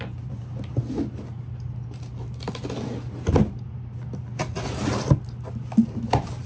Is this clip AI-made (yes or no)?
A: no